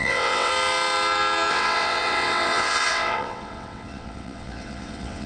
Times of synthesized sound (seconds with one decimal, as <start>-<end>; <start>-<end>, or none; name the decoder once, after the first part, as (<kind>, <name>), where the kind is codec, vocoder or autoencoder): 0.0-0.5 (vocoder, WaveNeXt); 1.5-5.3